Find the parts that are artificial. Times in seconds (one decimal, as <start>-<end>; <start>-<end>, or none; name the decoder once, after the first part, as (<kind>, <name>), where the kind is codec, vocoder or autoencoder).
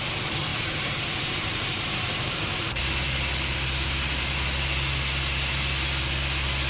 0.5-2.8 (vocoder, BigVGAN v2)